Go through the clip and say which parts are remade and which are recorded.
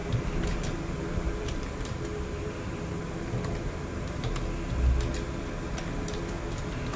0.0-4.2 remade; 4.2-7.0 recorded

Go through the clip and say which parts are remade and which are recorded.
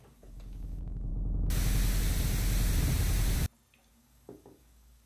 0.0-1.1 remade; 1.1-3.9 recorded; 3.9-5.1 remade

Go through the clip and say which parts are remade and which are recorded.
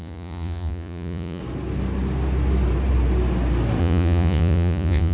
0.0-1.4 remade; 1.4-3.8 recorded; 3.8-5.1 remade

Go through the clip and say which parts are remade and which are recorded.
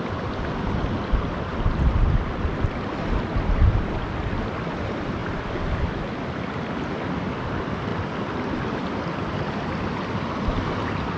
0.0-11.2 recorded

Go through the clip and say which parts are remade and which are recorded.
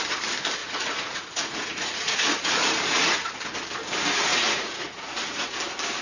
0.0-0.6 recorded; 0.6-3.4 remade; 3.4-4.3 recorded; 4.3-5.6 remade; 5.6-6.0 recorded